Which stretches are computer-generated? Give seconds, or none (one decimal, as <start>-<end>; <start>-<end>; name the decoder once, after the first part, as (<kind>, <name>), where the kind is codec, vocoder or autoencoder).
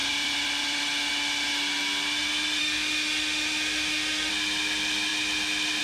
2.6-4.3 (autoencoder, DAC-VAE)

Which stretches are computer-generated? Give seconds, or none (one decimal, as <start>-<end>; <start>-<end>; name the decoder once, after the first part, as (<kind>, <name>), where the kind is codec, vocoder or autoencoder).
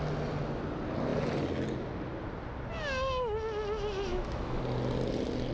4.1-4.6 (autoencoder, DAC-VAE)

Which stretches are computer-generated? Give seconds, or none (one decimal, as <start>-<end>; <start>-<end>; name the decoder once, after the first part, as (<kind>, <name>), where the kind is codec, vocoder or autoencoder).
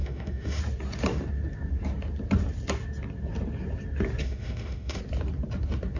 0.0-0.6 (autoencoder, DAC-VAE); 4.2-5.0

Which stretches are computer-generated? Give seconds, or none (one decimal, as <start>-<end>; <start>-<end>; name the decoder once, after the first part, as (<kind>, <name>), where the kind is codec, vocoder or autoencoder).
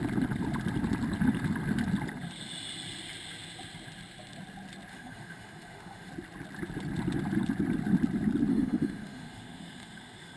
4.9-6.1 (autoencoder, DAC-VAE); 8.5-10.4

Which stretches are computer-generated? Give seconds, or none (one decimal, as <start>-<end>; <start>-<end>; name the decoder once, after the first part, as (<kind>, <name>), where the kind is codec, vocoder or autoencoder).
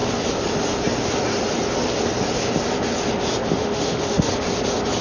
3.6-4.3 (autoencoder, DAC-VAE)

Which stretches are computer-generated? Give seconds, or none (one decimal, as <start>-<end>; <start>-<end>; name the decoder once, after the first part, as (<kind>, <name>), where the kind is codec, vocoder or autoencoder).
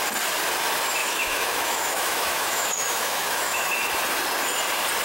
1.0-3.9 (autoencoder, DAC-VAE)